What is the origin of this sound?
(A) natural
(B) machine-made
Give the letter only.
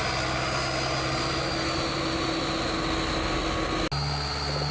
A